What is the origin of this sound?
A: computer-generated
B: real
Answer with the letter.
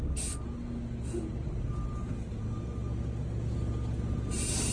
B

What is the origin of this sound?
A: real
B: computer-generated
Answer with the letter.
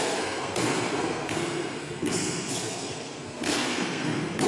B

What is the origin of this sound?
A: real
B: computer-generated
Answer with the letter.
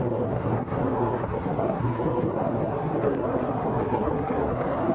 B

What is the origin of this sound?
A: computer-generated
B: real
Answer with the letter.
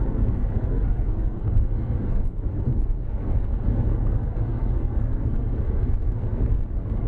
A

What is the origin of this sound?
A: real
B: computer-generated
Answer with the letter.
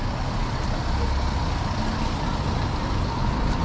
A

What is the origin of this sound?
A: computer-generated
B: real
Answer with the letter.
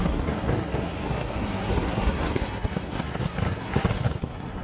A